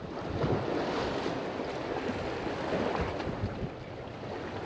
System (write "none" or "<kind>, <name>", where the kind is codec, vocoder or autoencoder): none